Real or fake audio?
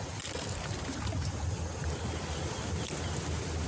real